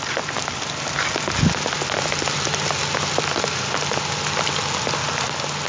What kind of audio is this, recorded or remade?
recorded